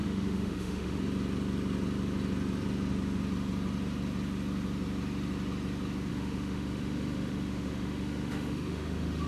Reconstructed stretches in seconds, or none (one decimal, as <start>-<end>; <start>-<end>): 0.0-1.0; 6.1-9.3